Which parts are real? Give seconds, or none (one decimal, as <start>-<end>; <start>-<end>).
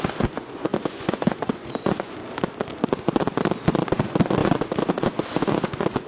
2.2-3.9